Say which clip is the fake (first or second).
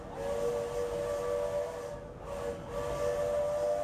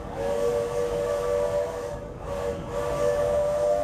second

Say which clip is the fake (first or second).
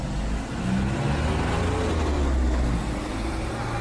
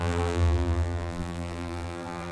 second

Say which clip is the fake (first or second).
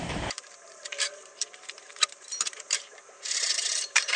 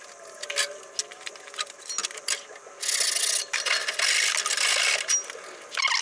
first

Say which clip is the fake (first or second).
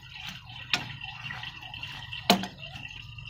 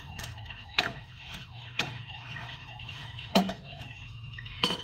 second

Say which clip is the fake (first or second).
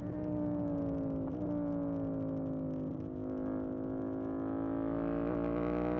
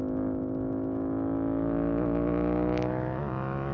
second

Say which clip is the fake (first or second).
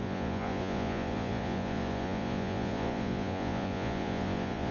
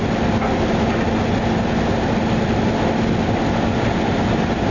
first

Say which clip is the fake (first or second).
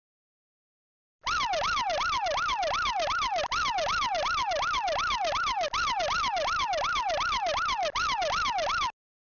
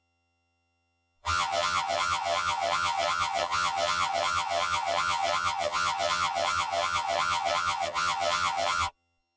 second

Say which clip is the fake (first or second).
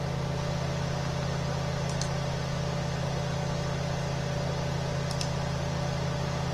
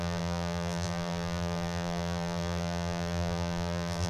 second